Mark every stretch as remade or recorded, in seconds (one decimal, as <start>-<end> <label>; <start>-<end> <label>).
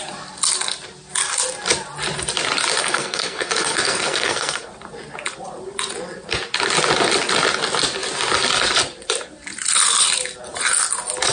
0.0-2.8 recorded; 2.8-4.7 remade; 4.7-11.3 recorded